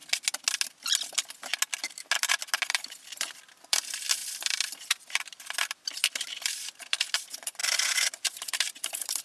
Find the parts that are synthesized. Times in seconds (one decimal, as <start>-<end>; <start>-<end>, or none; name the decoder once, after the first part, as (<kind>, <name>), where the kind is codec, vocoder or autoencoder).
2.7-9.2 (vocoder, BigVGAN v2)